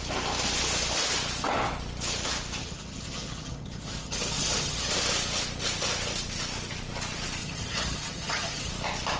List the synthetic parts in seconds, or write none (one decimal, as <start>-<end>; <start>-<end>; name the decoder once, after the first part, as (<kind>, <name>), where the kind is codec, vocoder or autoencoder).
2.6-4.9 (vocoder, HiFi-GAN); 7.4-8.7